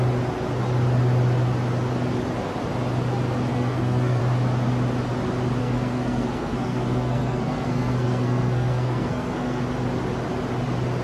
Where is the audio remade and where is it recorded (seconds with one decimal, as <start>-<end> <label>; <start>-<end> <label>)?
0.0-3.5 recorded; 3.5-4.2 remade; 4.2-5.6 recorded; 5.6-9.6 remade; 9.6-11.0 recorded

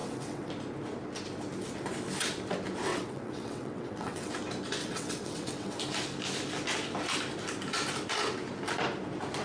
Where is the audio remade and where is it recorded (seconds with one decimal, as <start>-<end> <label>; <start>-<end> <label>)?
0.0-0.5 remade; 0.5-2.9 recorded; 2.9-4.3 remade; 4.3-4.8 recorded; 4.8-5.8 remade; 5.8-9.4 recorded

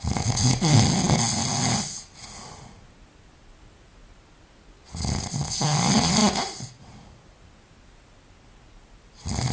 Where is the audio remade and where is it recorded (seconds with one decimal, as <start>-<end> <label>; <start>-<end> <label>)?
0.0-9.5 recorded

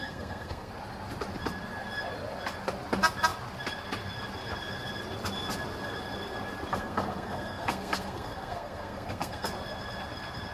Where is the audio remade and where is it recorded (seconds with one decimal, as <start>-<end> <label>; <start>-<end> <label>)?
0.0-0.7 remade; 0.7-6.7 recorded; 6.7-9.5 remade; 9.5-10.5 recorded